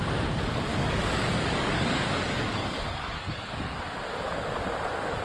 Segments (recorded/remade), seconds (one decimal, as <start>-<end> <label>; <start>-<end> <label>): 0.0-0.7 recorded; 0.7-3.8 remade; 3.8-5.2 recorded